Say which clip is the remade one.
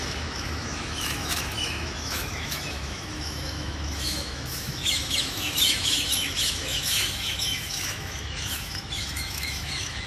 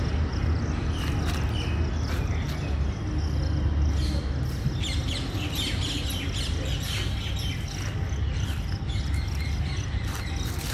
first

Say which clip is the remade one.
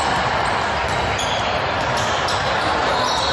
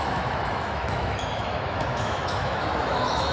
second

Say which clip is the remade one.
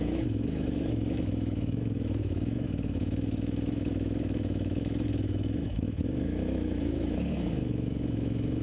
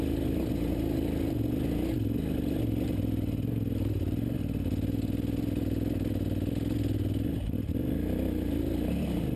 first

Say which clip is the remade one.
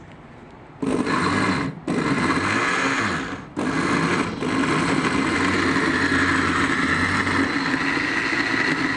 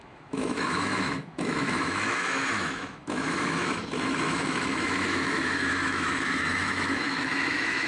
second